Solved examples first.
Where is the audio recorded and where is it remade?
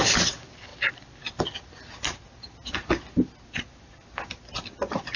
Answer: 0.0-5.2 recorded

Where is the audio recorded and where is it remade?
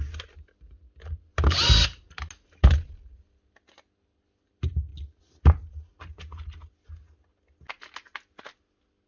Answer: 0.0-9.1 recorded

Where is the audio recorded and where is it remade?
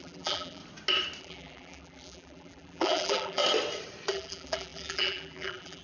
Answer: 0.0-0.6 remade; 0.6-1.2 recorded; 1.2-3.4 remade; 3.4-4.1 recorded; 4.1-5.8 remade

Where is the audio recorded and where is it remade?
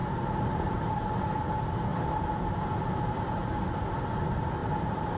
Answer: 0.0-1.0 remade; 1.0-4.6 recorded; 4.6-5.2 remade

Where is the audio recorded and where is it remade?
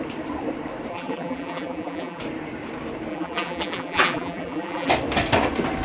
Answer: 0.0-0.9 recorded; 0.9-2.2 remade; 2.2-3.1 recorded; 3.1-4.9 remade; 4.9-5.8 recorded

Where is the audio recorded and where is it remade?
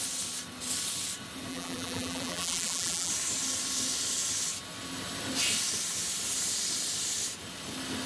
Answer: 0.0-1.5 recorded; 1.5-3.1 remade; 3.1-8.1 recorded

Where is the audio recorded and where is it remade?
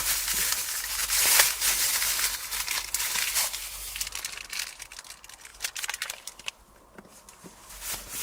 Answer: 0.0-5.5 recorded; 5.5-6.5 remade; 6.5-8.2 recorded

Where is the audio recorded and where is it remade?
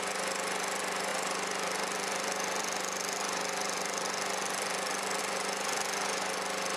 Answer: 0.0-1.1 recorded; 1.1-5.2 remade; 5.2-6.8 recorded